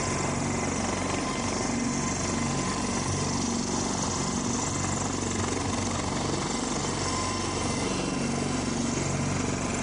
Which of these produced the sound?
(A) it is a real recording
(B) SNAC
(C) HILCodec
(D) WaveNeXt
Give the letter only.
A